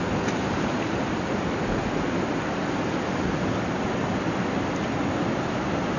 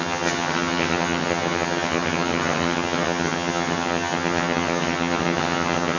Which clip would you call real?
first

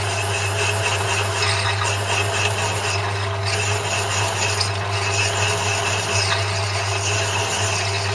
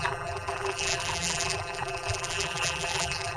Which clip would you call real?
first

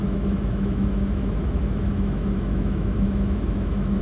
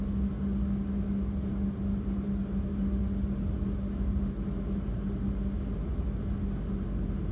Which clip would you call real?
second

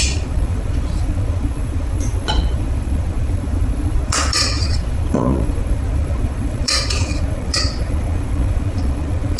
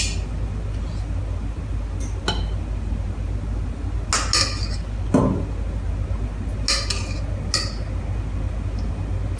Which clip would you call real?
second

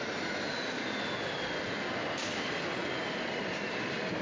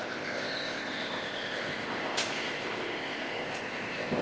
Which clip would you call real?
first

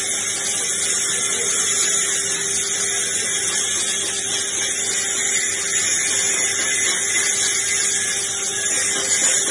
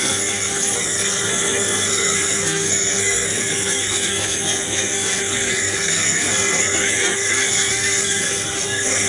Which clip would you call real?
first